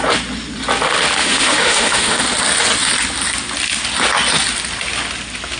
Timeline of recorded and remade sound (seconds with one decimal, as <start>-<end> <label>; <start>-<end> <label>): 0.0-1.2 recorded; 1.2-2.2 remade; 2.2-5.6 recorded

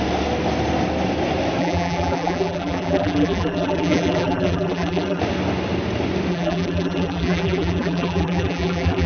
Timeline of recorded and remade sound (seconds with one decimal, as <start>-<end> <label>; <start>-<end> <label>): 0.0-1.6 recorded; 1.6-5.2 remade; 5.2-6.3 recorded; 6.3-9.1 remade

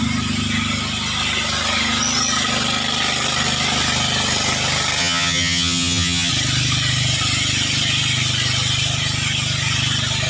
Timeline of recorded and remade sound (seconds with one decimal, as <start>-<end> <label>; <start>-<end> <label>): 0.0-5.0 recorded; 5.0-6.3 remade; 6.3-10.3 recorded